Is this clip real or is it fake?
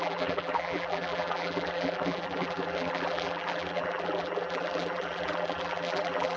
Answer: fake